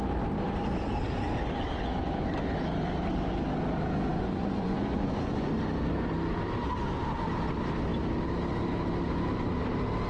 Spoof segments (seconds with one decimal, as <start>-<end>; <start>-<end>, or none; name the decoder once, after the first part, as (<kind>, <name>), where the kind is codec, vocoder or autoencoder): 4.1-5.5 (vocoder, Vocos)